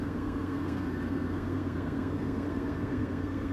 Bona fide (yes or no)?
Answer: no